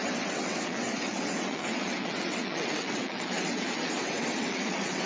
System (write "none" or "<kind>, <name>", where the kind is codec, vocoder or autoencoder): vocoder, WaveNeXt